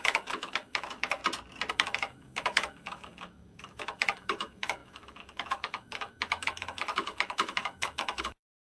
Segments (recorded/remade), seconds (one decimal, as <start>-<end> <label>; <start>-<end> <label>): 0.0-1.2 remade; 1.2-1.7 recorded; 1.7-8.8 remade